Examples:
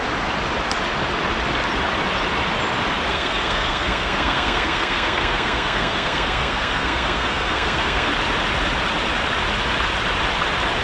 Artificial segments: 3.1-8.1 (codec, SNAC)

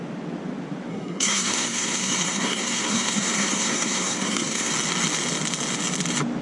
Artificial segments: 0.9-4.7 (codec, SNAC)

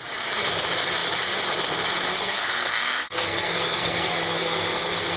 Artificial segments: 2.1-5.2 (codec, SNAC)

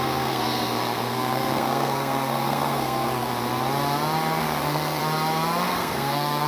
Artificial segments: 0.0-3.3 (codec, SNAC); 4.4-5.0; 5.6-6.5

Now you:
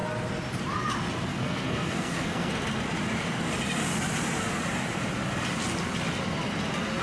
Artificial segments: 1.3-2.5 (codec, SNAC)

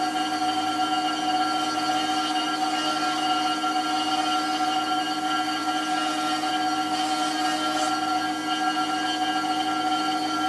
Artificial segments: none